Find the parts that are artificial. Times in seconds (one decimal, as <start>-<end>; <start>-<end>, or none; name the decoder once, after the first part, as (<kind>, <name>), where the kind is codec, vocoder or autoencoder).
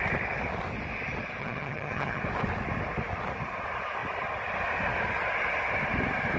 1.4-2.2 (vocoder, HiFi-GAN)